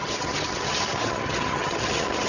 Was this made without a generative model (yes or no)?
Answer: no